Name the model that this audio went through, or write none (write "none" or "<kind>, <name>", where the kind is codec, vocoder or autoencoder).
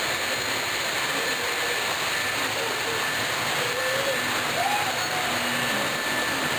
none